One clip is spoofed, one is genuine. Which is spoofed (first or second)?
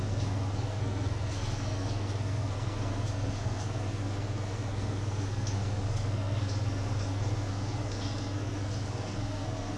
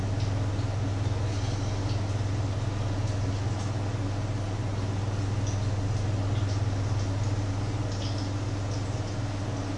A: first